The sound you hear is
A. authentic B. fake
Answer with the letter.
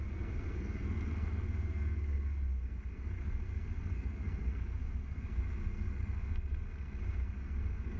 B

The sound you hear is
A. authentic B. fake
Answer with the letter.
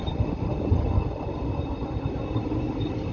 A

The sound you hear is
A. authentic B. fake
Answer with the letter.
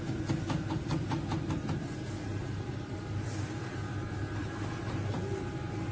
A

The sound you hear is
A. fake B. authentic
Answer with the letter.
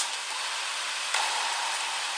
B